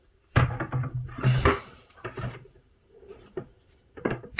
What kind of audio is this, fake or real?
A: fake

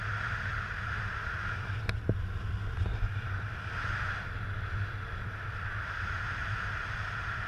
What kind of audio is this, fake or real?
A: real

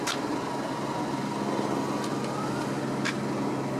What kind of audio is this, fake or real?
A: real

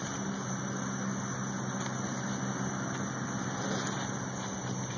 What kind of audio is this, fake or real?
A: real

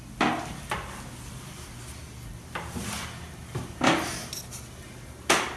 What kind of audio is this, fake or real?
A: real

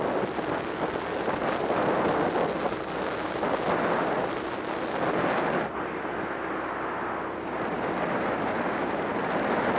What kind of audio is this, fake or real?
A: real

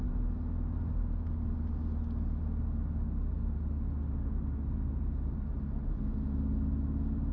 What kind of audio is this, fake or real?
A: real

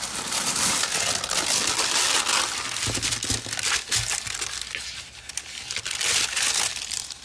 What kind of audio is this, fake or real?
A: real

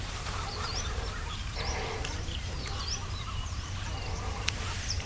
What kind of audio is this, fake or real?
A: fake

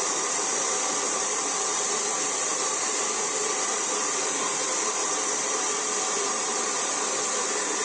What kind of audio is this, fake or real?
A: fake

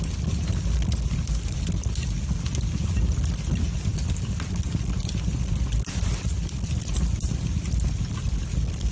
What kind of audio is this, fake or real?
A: real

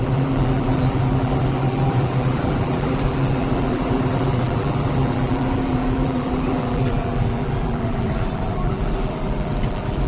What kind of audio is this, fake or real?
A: fake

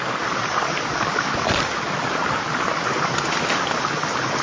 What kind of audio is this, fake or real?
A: real